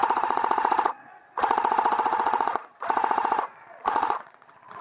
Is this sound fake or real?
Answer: fake